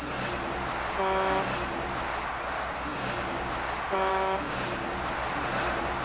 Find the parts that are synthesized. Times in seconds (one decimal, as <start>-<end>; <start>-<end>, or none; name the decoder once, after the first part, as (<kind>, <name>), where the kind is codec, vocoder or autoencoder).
2.9-3.5 (codec, DAC); 4.1-4.9